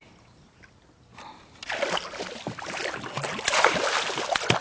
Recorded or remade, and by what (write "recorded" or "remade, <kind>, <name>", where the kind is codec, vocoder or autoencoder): recorded